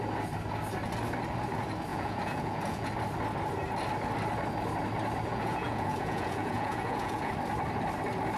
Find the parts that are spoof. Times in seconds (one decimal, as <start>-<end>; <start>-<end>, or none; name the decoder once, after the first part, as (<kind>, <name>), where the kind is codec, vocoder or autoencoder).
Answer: 1.9-2.9 (vocoder, Vocos); 5.3-7.3